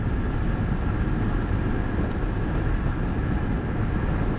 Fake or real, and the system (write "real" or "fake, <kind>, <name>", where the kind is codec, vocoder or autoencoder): real